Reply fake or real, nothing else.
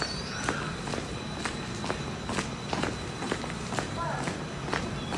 real